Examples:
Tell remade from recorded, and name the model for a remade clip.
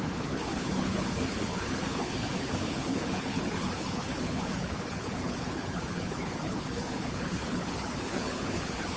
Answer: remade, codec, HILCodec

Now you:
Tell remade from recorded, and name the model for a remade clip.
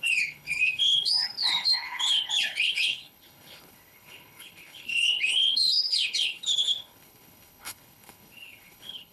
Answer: remade, codec, HILCodec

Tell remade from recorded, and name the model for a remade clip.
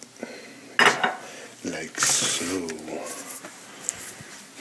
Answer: recorded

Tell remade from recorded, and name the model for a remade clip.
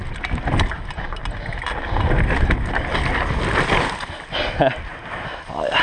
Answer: recorded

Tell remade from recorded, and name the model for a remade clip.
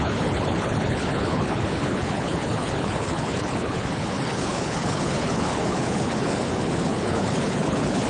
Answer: remade, codec, HILCodec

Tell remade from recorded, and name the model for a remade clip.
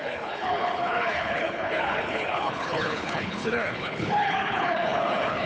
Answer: remade, codec, HILCodec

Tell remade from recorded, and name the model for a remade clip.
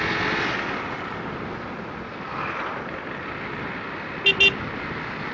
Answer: recorded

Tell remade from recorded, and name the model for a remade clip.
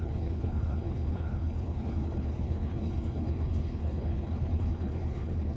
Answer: remade, codec, HILCodec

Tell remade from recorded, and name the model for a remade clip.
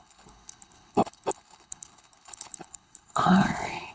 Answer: remade, codec, HILCodec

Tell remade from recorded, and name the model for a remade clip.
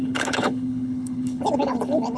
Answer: remade, codec, HILCodec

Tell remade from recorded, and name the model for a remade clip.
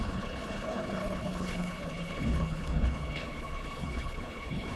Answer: remade, codec, HILCodec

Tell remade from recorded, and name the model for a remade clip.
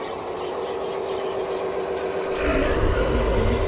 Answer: recorded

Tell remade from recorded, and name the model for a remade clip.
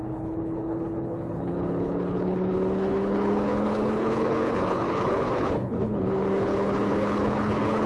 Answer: remade, codec, HILCodec